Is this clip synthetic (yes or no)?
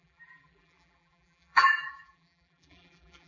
yes